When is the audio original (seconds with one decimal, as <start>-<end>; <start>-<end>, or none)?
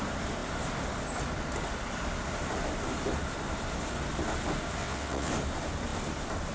0.0-4.8; 5.3-6.5